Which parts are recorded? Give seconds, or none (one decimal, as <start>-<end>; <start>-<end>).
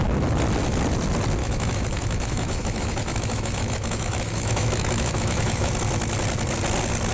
0.0-1.4; 5.7-7.1